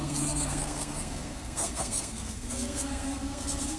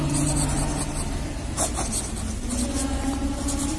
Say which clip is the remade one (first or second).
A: first